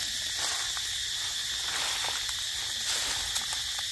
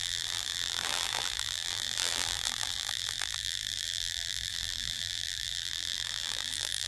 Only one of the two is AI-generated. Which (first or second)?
second